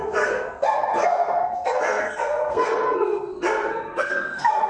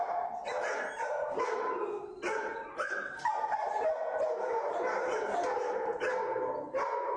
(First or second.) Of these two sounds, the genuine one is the second